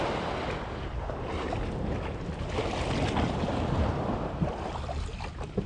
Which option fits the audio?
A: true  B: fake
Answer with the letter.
A